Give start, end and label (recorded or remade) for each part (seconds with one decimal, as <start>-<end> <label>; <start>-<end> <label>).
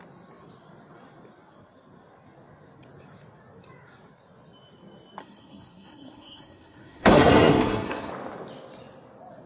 0.0-5.2 recorded; 5.2-8.1 remade; 8.1-9.5 recorded